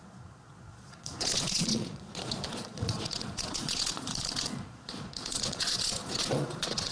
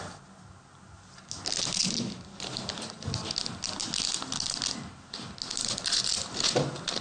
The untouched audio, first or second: second